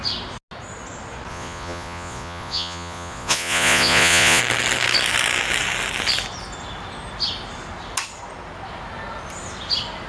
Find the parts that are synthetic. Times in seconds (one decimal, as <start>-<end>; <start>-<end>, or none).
1.3-4.4